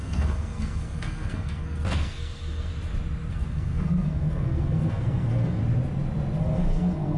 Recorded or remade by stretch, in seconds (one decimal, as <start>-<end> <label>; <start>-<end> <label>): 0.0-2.7 remade; 2.7-3.3 recorded; 3.3-5.6 remade; 5.6-6.4 recorded; 6.4-7.2 remade